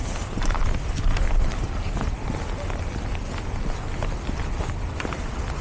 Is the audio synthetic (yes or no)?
no